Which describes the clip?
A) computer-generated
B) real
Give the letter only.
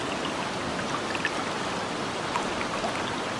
B